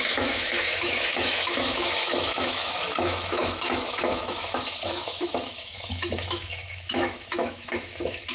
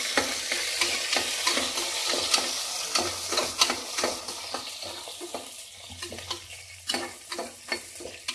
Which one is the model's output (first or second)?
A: first